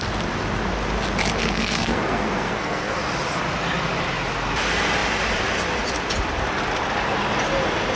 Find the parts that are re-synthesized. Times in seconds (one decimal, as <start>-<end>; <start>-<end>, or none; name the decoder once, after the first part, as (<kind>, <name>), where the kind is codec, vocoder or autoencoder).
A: 1.4-3.0 (codec, SNAC)